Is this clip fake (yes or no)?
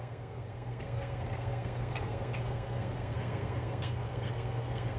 yes